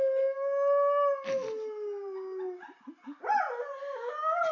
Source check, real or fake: real